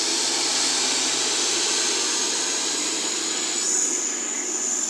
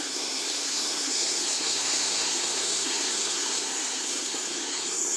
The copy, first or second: second